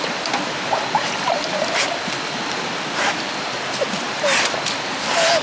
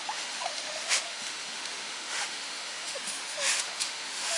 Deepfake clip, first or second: second